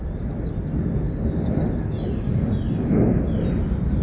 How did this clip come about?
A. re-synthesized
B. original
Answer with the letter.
B